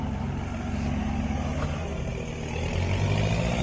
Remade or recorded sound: recorded